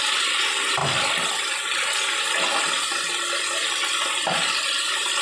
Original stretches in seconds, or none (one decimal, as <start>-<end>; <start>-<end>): 0.0-5.2